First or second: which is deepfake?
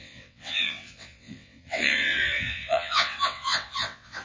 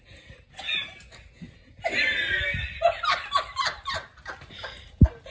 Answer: first